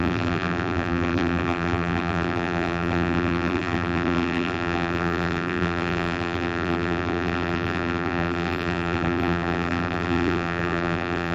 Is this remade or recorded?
remade